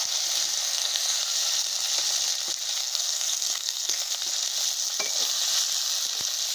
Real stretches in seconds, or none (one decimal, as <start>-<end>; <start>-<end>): 0.0-0.7; 1.2-2.8; 4.1-6.5